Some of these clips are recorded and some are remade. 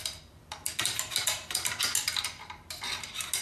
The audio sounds recorded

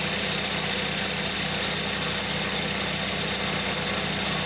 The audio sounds recorded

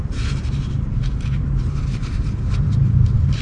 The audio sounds remade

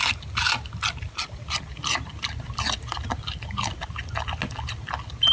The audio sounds recorded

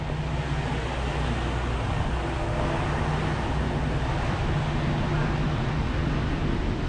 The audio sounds recorded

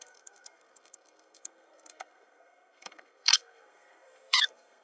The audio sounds remade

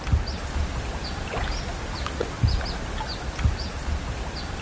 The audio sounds recorded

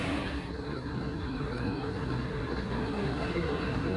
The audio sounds remade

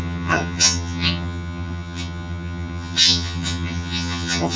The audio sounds remade